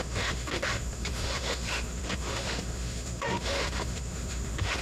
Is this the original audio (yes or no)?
no